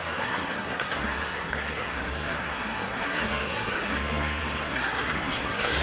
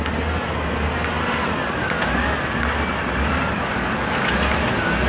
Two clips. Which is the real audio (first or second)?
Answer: second